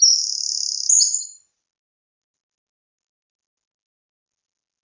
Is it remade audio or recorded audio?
recorded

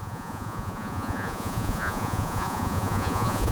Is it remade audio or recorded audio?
remade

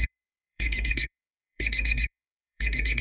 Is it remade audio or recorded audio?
remade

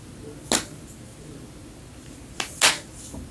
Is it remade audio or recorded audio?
recorded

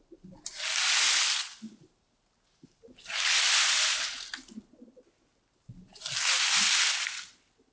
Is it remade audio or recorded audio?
recorded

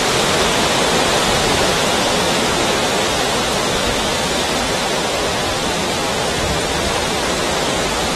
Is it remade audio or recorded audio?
recorded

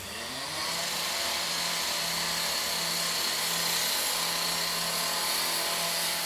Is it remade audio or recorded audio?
recorded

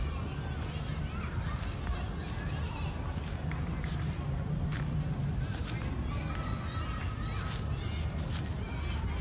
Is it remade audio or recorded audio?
recorded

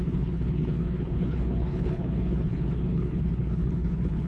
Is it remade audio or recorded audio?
remade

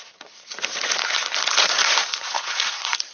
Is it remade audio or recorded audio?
remade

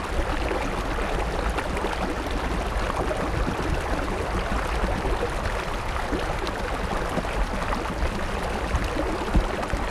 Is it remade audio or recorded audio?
recorded